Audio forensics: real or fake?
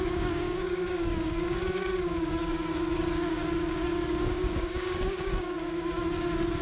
fake